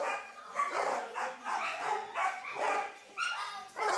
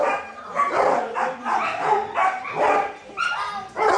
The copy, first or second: first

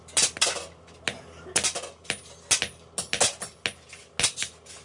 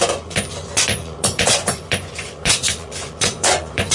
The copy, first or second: second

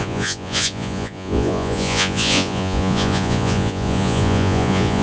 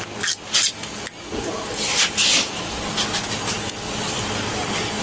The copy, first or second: first